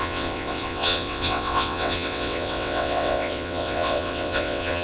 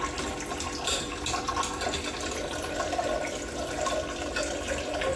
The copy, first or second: first